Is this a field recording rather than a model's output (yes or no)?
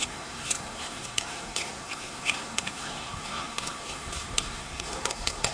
no